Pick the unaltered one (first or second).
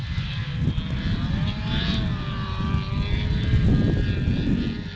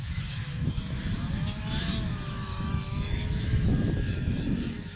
first